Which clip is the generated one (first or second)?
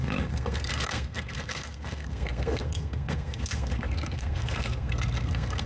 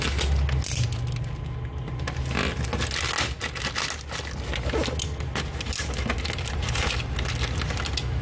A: first